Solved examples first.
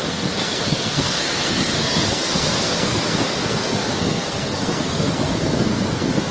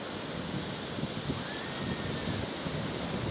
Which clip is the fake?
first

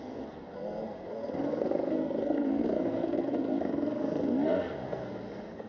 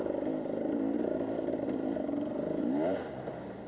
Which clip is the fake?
first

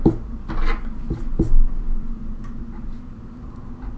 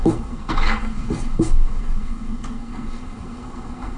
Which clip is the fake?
second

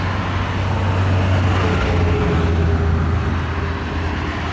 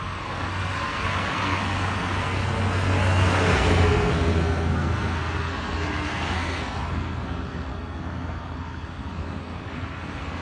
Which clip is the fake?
second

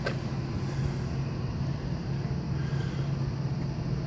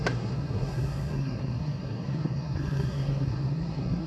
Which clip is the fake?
second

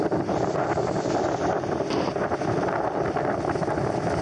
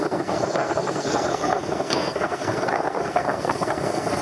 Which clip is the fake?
second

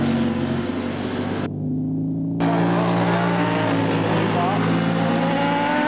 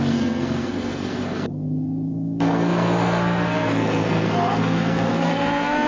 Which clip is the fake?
second